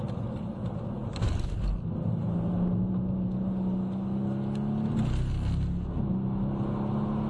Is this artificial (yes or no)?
no